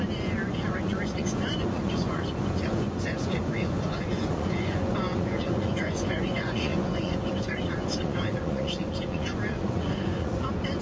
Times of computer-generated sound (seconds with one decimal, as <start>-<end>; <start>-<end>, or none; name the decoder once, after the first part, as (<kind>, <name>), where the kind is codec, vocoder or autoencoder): 0.0-10.8 (vocoder, Vocos)